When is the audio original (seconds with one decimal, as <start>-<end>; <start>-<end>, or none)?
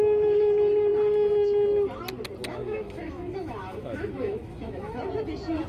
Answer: 0.0-2.5; 5.0-5.7